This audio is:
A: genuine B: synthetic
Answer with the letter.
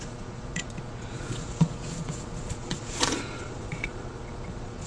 B